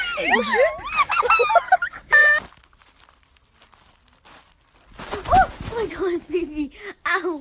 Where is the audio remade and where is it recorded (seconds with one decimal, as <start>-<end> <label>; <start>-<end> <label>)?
0.0-7.4 recorded